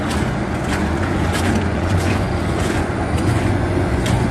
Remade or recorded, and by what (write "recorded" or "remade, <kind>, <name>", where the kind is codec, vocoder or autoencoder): remade, vocoder, Vocos